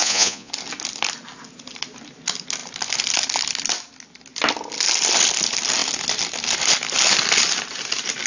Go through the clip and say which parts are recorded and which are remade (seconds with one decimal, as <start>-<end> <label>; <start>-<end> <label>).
0.0-0.5 remade; 0.5-8.3 recorded